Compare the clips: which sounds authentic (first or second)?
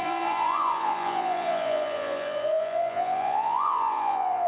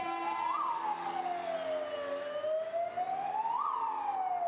second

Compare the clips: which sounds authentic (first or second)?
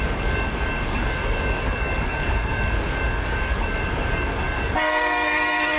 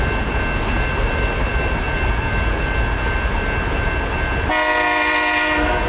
second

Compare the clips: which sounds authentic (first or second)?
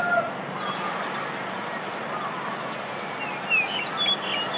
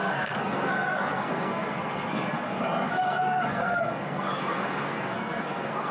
first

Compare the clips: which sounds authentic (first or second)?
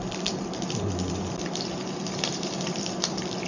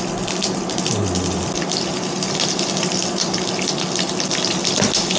second